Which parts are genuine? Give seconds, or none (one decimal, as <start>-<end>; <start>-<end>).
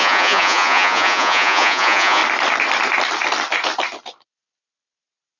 2.2-5.4